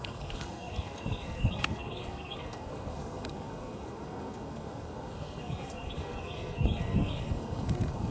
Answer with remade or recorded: remade